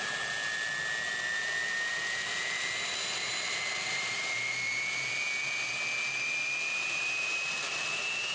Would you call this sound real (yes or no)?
no